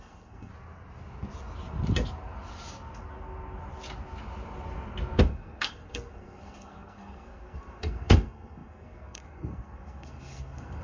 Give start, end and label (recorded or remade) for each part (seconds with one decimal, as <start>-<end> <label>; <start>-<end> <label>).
0.0-0.5 remade; 0.5-5.2 recorded; 5.2-10.8 remade